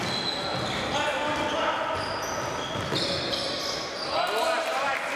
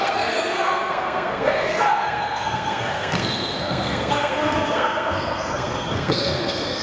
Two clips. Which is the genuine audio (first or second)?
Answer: first